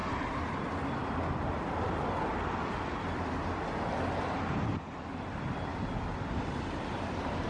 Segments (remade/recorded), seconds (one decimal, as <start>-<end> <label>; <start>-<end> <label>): 0.0-7.5 recorded